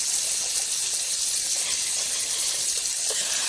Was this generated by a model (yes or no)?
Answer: no